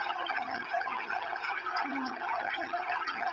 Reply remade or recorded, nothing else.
remade